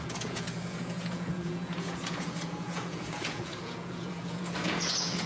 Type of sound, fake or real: fake